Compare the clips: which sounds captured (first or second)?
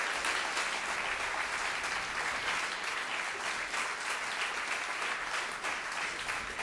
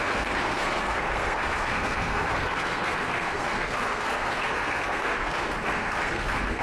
first